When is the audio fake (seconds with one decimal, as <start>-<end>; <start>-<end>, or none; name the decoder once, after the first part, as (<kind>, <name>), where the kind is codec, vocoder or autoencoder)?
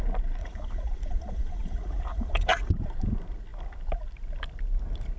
0.4-2.7 (vocoder, Vocos)